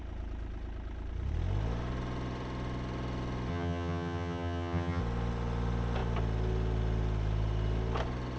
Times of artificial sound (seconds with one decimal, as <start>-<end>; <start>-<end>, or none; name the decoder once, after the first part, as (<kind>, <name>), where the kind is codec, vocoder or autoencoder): 3.5-5.0 (vocoder, HiFi-GAN)